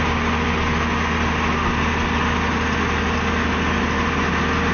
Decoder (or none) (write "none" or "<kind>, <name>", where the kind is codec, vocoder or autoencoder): none